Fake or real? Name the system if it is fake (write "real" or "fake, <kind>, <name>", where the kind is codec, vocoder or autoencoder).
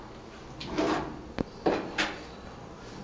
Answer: real